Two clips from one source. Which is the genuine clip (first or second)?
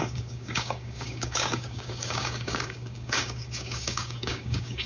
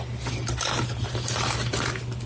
second